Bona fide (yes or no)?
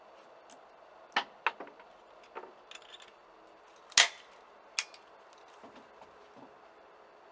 yes